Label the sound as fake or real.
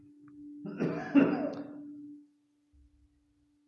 real